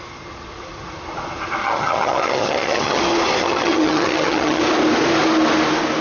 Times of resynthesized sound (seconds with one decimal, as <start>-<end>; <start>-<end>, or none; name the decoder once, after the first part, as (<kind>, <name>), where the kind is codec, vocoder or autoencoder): 1.6-3.0 (vocoder, HiFi-GAN); 3.4-4.6

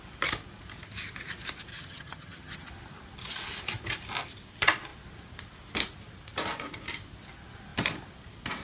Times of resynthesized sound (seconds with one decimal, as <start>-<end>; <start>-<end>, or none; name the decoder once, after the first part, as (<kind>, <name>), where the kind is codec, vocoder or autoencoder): 1.7-2.7 (vocoder, HiFi-GAN)

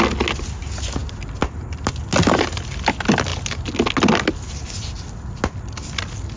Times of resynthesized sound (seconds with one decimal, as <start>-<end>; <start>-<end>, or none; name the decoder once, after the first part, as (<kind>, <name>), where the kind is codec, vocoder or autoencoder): none

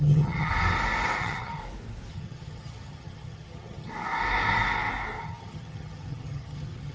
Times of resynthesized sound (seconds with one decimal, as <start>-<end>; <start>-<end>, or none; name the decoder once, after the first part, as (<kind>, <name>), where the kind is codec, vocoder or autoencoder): 0.0-0.5 (vocoder, HiFi-GAN); 1.2-1.6; 2.1-3.9; 5.2-6.9

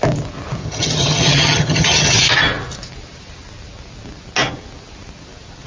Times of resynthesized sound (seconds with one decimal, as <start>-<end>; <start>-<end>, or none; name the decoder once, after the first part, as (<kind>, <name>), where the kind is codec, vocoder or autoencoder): 0.6-2.1 (vocoder, HiFi-GAN)

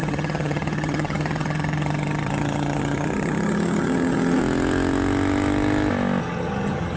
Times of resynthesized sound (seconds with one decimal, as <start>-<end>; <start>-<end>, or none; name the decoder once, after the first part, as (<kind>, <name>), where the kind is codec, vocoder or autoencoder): 0.0-4.4 (vocoder, HiFi-GAN); 6.2-7.0

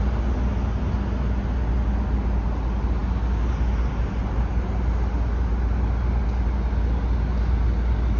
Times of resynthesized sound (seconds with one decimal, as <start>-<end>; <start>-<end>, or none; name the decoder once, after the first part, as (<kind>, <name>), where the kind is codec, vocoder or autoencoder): none